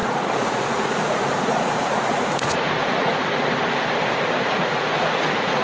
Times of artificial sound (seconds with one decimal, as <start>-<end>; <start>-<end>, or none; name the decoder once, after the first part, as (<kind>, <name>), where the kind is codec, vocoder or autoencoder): 0.0-3.1 (vocoder, Vocos); 4.4-5.6